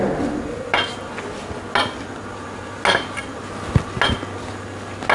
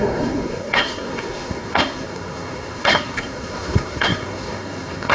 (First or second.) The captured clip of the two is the first